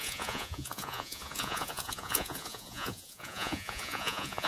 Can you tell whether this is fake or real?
fake